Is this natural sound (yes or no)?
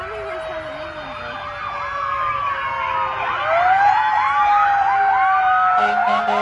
yes